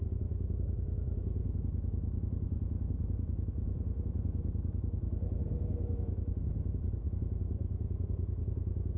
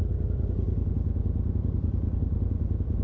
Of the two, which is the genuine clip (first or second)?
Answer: second